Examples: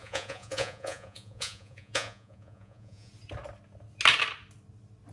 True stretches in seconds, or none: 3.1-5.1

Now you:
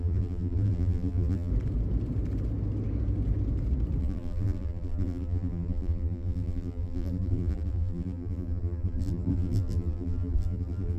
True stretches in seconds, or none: 1.5-4.0

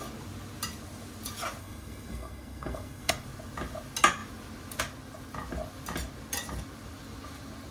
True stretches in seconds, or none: 0.0-1.6; 3.1-7.7

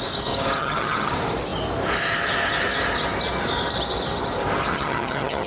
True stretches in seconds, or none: 0.0-0.6; 1.1-4.7

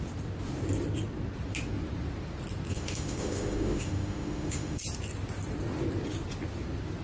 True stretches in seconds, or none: 0.0-2.7; 4.8-7.0

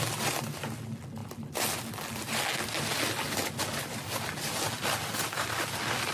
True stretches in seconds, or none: 0.0-6.1